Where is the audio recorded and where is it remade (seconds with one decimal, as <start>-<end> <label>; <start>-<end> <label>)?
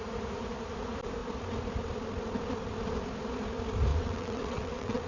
0.0-3.9 recorded; 3.9-5.1 remade